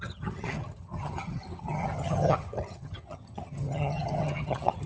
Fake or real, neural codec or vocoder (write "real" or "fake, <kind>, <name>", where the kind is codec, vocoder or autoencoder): fake, vocoder, HiFi-GAN